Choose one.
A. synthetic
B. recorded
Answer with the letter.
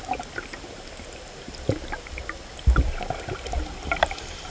B